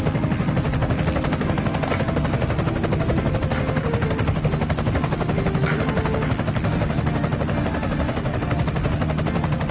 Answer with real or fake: real